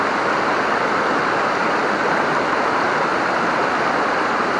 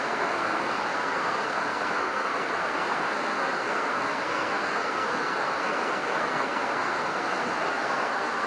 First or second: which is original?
first